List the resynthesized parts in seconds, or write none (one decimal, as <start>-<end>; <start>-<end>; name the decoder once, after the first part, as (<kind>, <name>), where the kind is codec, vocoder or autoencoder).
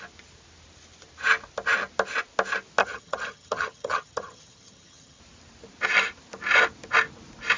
2.8-5.2 (vocoder, HiFi-GAN)